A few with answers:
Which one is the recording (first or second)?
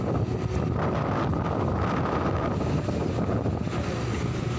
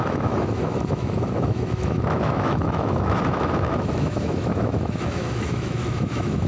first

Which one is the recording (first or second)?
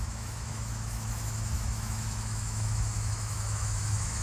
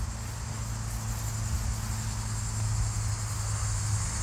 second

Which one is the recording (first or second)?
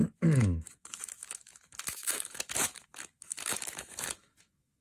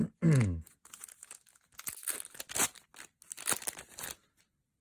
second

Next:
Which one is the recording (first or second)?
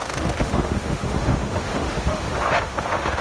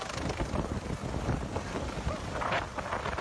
second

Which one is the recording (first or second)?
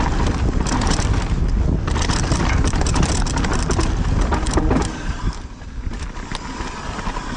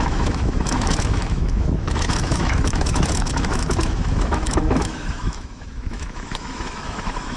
first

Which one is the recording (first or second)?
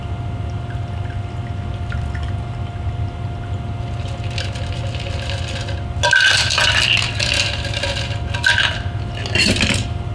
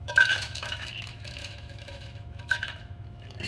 first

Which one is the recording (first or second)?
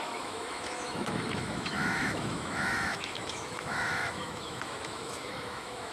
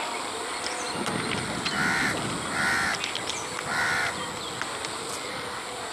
second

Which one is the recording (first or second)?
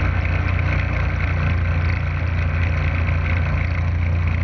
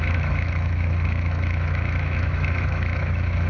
first